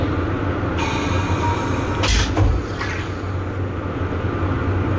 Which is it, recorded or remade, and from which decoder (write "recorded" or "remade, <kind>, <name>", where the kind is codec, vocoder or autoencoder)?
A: recorded